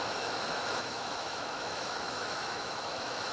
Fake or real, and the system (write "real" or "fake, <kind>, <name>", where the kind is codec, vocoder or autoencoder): fake, autoencoder, DAC-VAE